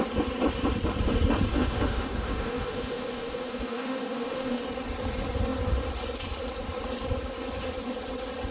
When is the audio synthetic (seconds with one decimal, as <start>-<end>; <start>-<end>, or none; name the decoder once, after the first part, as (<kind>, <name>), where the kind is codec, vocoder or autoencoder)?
1.5-4.6 (autoencoder, DAC-VAE)